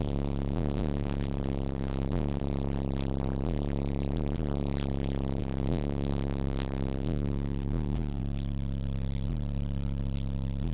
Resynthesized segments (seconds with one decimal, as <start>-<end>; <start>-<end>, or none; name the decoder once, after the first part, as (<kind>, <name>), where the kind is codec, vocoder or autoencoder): 0.0-2.4 (codec, DAC); 5.4-8.2